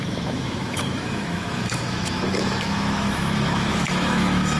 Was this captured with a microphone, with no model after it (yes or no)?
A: no